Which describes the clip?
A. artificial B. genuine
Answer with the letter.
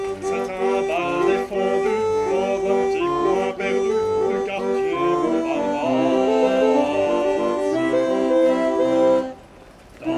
B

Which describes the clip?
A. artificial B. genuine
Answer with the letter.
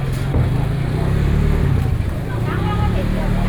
B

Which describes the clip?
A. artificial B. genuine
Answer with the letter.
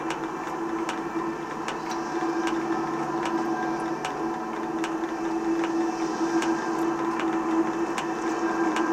B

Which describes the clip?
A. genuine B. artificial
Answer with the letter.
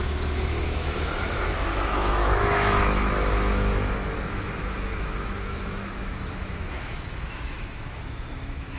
B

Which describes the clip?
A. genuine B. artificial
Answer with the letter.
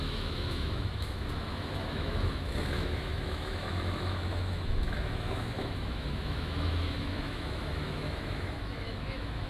B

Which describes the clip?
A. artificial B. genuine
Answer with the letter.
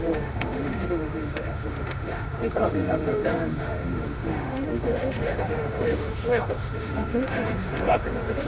A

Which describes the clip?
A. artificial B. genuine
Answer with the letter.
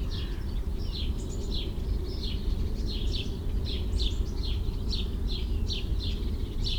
B